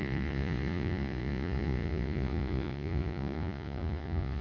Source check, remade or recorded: remade